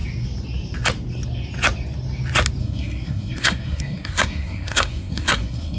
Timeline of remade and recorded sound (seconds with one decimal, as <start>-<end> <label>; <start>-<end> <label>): 0.0-2.6 recorded; 2.6-5.8 remade